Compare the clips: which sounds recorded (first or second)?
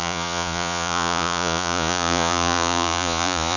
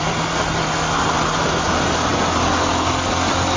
second